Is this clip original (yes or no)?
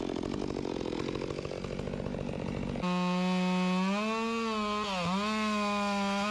yes